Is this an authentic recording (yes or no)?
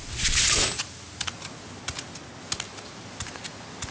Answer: yes